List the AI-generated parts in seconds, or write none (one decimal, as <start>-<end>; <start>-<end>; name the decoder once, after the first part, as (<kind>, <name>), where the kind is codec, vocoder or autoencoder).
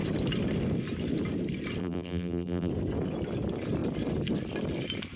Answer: 1.8-2.7 (vocoder, BigVGAN v2)